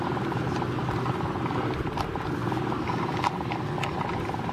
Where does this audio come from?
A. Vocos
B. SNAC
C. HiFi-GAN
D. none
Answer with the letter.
D